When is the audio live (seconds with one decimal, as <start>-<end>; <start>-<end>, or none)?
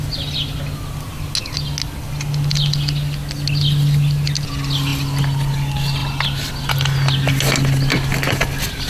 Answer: 0.0-8.9